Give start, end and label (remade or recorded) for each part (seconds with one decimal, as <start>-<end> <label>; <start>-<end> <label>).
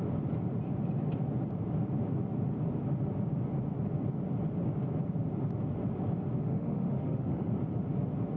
0.0-6.4 recorded; 6.4-7.5 remade; 7.5-8.4 recorded